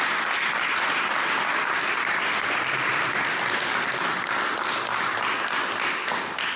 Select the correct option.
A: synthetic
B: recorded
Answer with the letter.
B